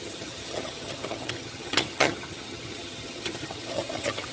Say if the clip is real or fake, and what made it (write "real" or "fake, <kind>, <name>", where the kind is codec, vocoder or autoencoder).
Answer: fake, vocoder, HiFi-GAN